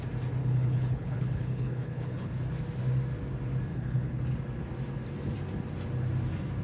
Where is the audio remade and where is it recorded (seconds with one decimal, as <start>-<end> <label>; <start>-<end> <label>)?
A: 0.0-0.4 recorded; 0.4-2.3 remade; 2.3-3.7 recorded; 3.7-4.2 remade; 4.2-6.6 recorded